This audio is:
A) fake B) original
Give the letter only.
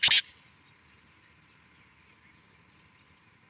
B